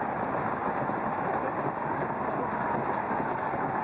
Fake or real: real